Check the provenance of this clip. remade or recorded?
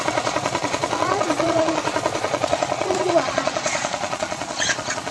remade